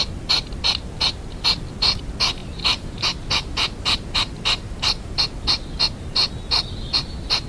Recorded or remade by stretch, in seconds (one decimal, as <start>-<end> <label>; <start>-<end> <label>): 0.0-2.4 recorded; 2.4-5.2 remade; 5.2-7.5 recorded